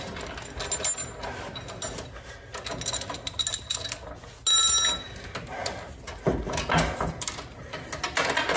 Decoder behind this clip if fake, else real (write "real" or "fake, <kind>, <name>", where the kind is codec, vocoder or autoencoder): real